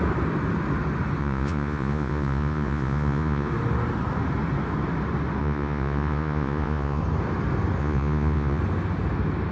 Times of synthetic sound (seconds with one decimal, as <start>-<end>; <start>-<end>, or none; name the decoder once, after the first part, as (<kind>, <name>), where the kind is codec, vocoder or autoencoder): 1.2-3.5 (vocoder, Vocos); 5.4-7.0; 7.8-8.6